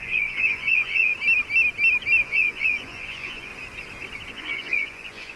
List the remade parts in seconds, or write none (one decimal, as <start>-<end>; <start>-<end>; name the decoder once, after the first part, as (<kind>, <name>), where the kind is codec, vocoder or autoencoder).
0.0-1.1 (vocoder, Vocos); 2.2-3.5; 4.3-5.4